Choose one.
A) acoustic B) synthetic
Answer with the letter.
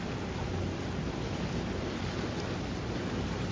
A